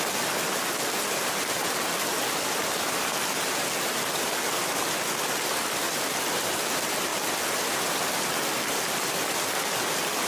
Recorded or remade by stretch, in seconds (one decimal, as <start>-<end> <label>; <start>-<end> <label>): 0.0-10.3 recorded